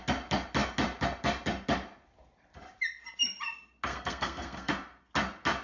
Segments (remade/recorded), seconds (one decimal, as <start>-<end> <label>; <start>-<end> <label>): 0.0-3.9 recorded; 3.9-4.7 remade; 4.7-5.6 recorded

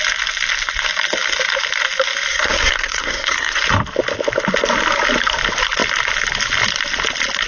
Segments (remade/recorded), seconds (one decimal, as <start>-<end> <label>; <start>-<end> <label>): 0.0-2.3 recorded; 2.3-3.6 remade; 3.6-7.5 recorded

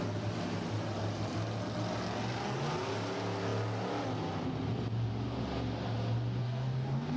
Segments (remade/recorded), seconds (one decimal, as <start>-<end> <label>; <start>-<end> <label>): 0.0-6.4 recorded; 6.4-7.2 remade

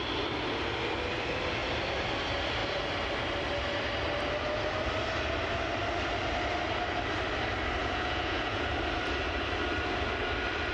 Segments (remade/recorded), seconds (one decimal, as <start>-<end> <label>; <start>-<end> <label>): 0.0-7.8 recorded; 7.8-8.7 remade; 8.7-10.7 recorded

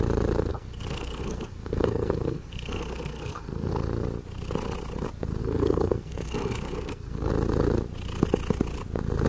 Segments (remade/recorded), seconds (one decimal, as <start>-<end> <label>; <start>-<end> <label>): 0.0-0.5 recorded; 0.5-3.7 remade; 3.7-5.4 recorded; 5.4-7.3 remade; 7.3-9.3 recorded